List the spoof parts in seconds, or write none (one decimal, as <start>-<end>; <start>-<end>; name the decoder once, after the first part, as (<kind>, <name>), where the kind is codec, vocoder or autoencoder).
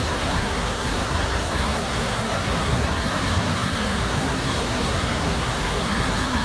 0.0-6.4 (codec, SNAC)